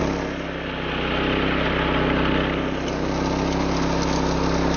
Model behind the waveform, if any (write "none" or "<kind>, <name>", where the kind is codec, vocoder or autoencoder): none